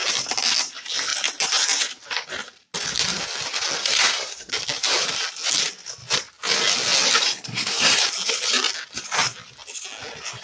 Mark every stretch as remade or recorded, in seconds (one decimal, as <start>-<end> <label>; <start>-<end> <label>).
0.0-3.8 recorded; 3.8-4.5 remade; 4.5-7.3 recorded; 7.3-8.0 remade; 8.0-10.4 recorded

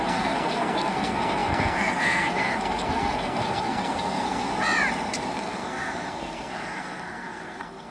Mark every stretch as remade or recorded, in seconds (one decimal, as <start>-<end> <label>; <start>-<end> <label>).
0.0-4.5 remade; 4.5-5.3 recorded; 5.3-7.9 remade

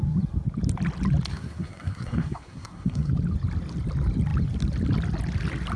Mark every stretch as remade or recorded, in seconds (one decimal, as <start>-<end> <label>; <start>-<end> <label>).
0.0-1.3 recorded; 1.3-3.1 remade; 3.1-5.8 recorded

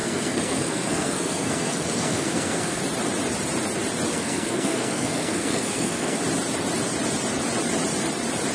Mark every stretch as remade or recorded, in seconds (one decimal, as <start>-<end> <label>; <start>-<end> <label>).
0.0-2.8 remade; 2.8-4.1 recorded; 4.1-6.2 remade; 6.2-8.5 recorded

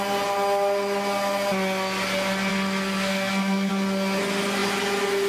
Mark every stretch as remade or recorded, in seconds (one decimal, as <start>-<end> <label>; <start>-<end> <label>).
0.0-2.5 recorded; 2.5-3.7 remade; 3.7-5.3 recorded

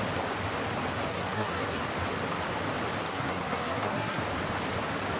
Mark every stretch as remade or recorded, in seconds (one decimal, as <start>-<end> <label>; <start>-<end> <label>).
0.0-1.1 recorded; 1.1-1.8 remade; 1.8-3.1 recorded; 3.1-4.2 remade; 4.2-5.2 recorded